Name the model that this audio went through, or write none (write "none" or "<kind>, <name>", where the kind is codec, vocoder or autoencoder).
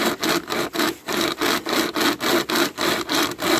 none